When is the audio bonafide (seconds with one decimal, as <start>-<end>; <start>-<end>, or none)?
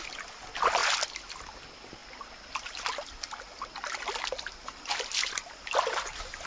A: 0.0-6.5